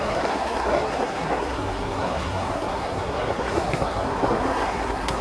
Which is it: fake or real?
fake